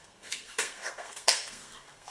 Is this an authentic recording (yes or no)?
no